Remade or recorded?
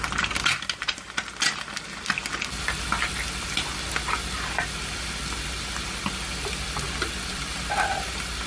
recorded